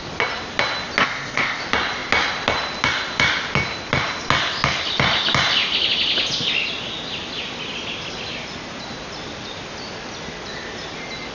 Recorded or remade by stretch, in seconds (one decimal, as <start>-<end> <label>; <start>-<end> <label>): 0.0-1.0 recorded; 1.0-1.6 remade; 1.6-11.3 recorded